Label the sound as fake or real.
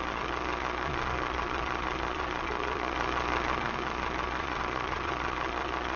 fake